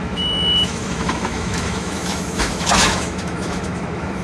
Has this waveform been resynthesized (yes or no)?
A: yes